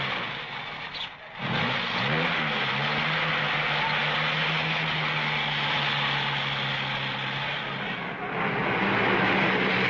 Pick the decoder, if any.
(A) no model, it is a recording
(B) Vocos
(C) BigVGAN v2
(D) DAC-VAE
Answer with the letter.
A